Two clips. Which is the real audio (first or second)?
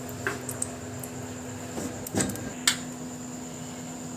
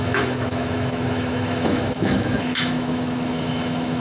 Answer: first